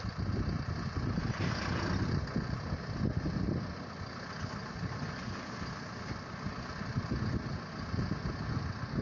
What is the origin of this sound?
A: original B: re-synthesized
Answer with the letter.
A